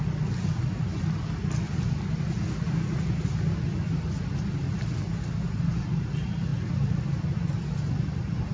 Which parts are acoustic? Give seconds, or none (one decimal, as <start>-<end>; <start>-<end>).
0.0-8.5